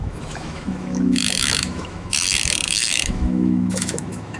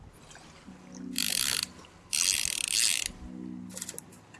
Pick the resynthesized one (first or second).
first